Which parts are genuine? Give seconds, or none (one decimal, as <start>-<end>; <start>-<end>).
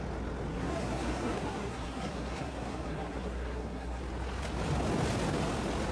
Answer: 0.0-0.5; 4.0-5.9